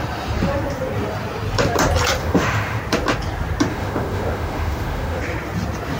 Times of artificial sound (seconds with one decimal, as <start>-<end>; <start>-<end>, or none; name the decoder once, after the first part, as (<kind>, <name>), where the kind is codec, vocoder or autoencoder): 2.2-2.8 (autoencoder, DAC-VAE); 3.7-5.2